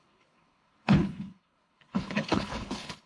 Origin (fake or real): fake